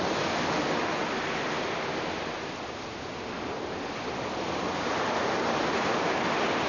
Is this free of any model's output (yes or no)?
yes